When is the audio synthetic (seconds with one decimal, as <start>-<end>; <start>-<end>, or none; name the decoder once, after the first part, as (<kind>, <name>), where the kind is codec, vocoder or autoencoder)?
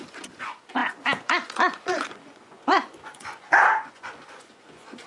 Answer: 0.0-5.1 (vocoder, Vocos)